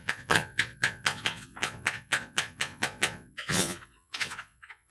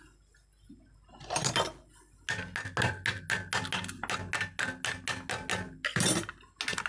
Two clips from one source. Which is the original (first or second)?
second